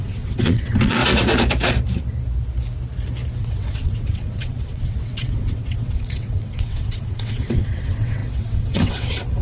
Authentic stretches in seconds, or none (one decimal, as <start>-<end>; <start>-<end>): 1.0-3.4